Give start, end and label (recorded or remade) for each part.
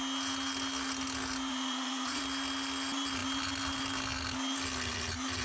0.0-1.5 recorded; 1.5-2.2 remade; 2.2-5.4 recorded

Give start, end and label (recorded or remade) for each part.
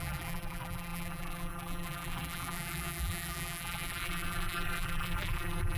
0.0-5.8 remade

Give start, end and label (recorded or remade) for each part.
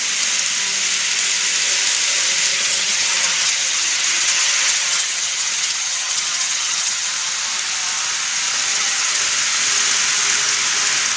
0.0-2.5 recorded; 2.5-7.1 remade; 7.1-8.7 recorded; 8.7-9.2 remade; 9.2-11.2 recorded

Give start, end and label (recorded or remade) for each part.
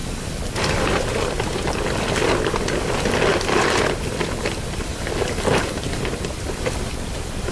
0.0-7.5 recorded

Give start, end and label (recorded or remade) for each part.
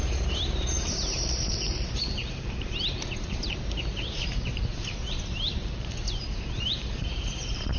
0.0-7.8 remade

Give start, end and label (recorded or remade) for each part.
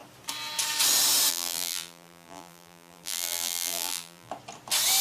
0.0-1.3 recorded; 1.3-4.3 remade; 4.3-5.0 recorded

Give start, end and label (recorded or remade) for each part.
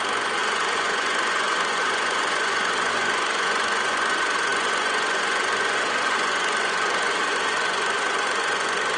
0.0-9.0 remade